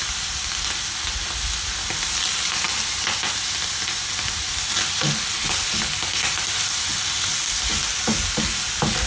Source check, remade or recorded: recorded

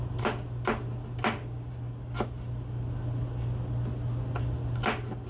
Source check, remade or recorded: recorded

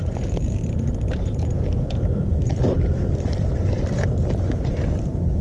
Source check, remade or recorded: remade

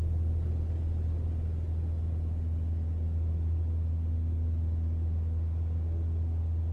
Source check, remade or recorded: recorded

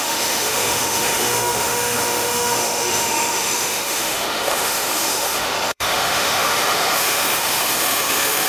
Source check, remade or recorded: remade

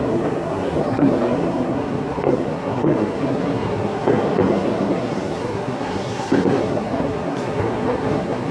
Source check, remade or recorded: remade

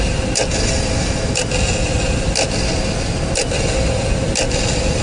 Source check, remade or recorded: recorded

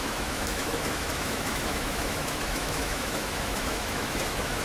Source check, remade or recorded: remade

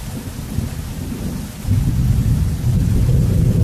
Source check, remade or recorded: recorded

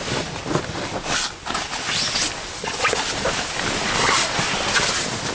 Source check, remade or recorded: recorded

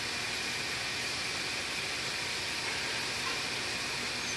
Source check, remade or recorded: recorded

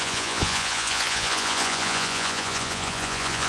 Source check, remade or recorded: remade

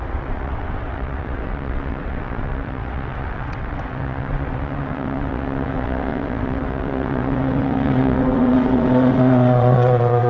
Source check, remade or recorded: remade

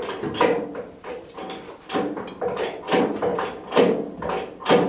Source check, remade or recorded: recorded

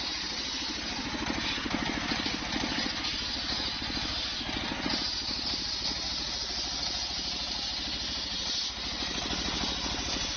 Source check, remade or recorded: recorded